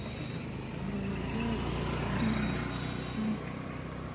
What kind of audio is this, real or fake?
real